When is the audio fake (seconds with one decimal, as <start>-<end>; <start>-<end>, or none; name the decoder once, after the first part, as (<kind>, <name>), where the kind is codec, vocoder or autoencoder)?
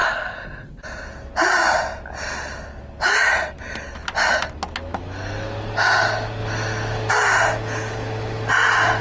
none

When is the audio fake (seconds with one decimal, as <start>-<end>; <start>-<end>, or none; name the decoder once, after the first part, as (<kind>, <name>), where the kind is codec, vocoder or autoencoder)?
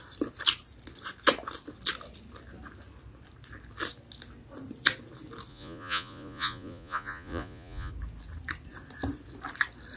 5.5-7.9 (vocoder, Vocos)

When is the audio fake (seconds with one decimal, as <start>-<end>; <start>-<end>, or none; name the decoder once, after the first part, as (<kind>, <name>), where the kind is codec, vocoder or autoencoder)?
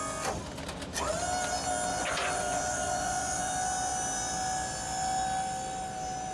1.9-3.5 (vocoder, Vocos)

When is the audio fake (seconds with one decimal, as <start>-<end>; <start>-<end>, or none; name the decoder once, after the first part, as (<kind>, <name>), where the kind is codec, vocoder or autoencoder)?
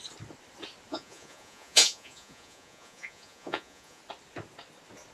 0.9-4.0 (vocoder, Vocos)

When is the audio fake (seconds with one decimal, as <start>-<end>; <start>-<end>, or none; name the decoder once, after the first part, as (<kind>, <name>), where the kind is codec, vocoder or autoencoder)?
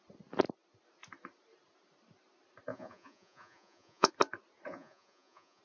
2.7-4.1 (vocoder, Vocos); 4.7-5.6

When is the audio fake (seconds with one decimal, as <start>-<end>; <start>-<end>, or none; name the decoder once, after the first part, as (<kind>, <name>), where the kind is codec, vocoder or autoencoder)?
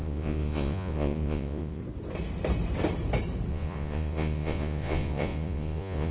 0.0-1.8 (vocoder, Vocos); 3.5-6.1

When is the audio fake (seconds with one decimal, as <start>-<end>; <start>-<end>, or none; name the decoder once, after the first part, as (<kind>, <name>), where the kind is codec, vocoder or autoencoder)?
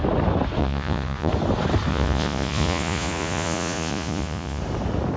0.6-1.3 (vocoder, Vocos); 1.9-4.6